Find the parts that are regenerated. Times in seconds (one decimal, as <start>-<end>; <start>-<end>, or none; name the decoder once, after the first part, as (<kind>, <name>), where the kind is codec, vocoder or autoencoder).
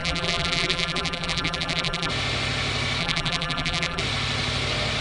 0.0-2.1 (vocoder, BigVGAN v2); 3.0-4.0